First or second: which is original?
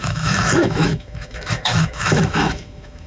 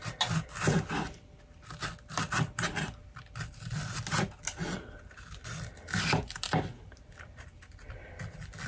second